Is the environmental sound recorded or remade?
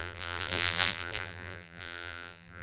remade